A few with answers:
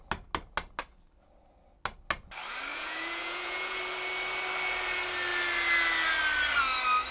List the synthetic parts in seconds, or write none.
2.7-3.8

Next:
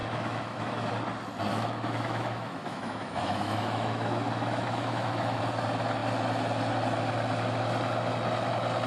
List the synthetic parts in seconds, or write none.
0.0-0.9; 1.5-5.4

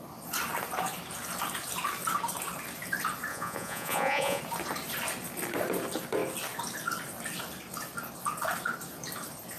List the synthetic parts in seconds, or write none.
3.3-4.4

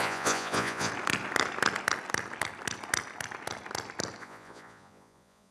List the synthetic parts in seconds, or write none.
0.0-0.9; 4.2-5.5

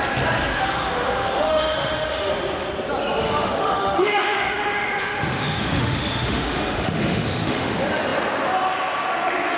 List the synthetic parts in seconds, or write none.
0.5-2.3; 3.2-7.7